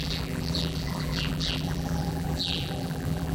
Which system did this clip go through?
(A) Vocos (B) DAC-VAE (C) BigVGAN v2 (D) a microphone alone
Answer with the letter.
C